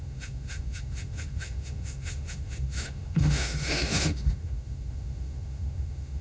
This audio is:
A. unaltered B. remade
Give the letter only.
B